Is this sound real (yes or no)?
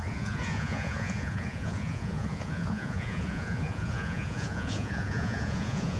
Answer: no